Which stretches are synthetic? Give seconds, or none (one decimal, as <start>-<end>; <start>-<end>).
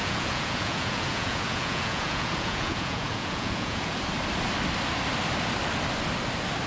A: 0.0-4.0